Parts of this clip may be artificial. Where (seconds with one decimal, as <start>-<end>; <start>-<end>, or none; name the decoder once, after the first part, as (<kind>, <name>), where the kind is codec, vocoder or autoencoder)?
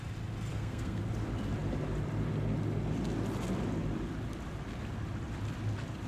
0.5-1.0 (codec, SNAC)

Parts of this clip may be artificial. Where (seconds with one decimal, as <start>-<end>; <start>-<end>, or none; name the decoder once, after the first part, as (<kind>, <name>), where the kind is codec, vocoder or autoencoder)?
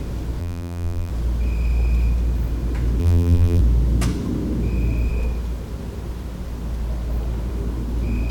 0.4-1.1 (vocoder, BigVGAN v2); 3.0-3.6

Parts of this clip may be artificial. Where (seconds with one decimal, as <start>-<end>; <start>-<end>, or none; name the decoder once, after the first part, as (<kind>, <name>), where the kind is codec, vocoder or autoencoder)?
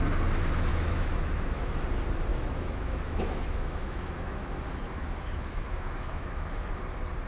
0.7-1.7 (autoencoder, DAC-VAE); 2.3-6.7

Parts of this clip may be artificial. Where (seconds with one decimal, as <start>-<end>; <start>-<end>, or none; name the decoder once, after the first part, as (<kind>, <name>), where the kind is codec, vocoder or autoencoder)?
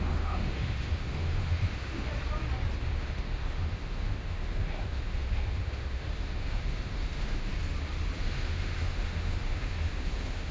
0.0-2.1 (autoencoder, DAC-VAE); 2.8-7.5; 8.2-10.5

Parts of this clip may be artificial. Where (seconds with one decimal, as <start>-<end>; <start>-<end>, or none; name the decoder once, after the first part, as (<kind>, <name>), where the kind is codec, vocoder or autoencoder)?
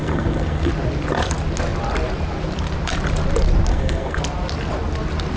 0.0-0.7 (codec, SNAC); 3.7-4.2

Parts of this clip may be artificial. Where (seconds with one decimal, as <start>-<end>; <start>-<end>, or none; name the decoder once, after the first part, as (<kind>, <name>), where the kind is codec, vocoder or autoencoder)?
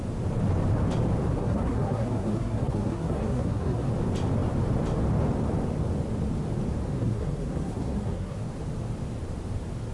1.4-3.9 (codec, SNAC); 6.9-8.4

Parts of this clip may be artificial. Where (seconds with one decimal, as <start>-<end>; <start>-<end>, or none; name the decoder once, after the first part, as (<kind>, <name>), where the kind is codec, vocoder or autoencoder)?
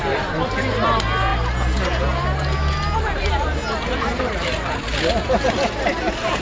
none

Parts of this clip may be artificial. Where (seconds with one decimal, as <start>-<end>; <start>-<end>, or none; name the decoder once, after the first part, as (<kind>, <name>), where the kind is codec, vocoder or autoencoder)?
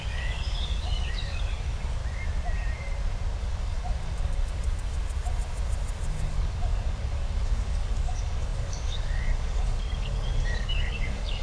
0.0-2.0 (codec, DAC); 3.4-5.0; 6.1-11.4